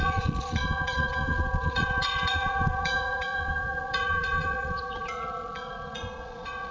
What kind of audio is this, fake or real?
fake